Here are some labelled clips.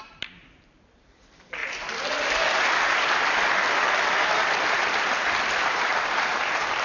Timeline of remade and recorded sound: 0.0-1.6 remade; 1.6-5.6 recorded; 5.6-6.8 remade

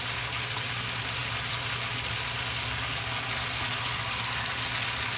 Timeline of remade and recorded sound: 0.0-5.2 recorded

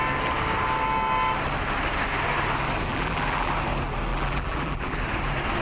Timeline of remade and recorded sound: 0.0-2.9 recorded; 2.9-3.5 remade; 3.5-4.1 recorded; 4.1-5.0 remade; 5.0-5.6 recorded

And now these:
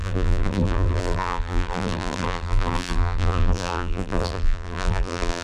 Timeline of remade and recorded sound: 0.0-5.4 remade

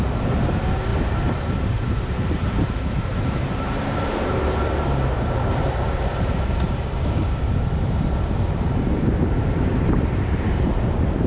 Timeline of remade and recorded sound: 0.0-11.3 remade

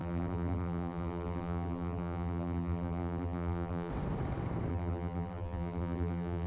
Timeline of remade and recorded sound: 0.0-3.9 remade; 3.9-4.7 recorded; 4.7-6.5 remade